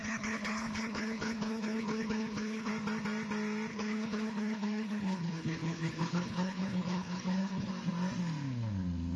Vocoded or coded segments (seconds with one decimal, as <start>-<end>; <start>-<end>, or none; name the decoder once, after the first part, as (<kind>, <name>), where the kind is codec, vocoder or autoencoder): 0.0-2.7 (codec, HILCodec); 3.7-7.7